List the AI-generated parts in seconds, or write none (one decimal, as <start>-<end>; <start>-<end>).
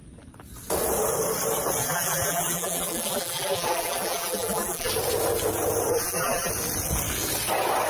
1.8-4.9; 5.9-6.5